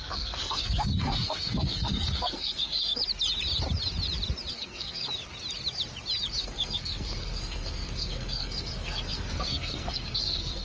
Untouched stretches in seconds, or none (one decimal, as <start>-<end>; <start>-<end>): 3.0-4.5; 5.0-6.4